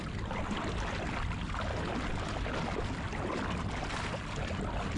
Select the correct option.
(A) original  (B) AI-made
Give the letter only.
A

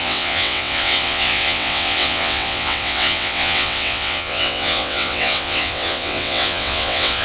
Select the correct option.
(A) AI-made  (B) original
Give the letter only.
A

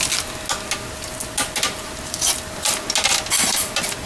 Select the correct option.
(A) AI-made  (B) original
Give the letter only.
B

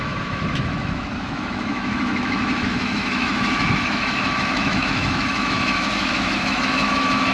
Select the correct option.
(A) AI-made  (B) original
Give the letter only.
A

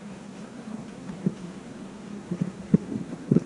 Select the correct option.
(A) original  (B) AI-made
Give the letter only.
B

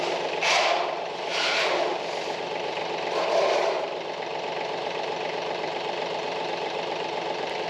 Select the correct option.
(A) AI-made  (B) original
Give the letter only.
A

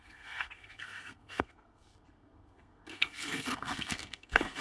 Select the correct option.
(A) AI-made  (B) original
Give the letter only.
A